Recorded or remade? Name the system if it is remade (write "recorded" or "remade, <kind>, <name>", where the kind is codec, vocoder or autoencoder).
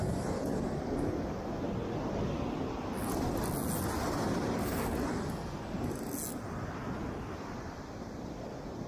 recorded